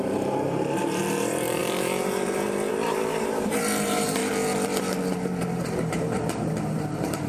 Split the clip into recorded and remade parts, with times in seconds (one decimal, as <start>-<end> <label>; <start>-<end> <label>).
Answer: 0.0-4.2 remade; 4.2-4.8 recorded; 4.8-7.3 remade